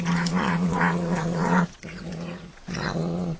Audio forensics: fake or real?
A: fake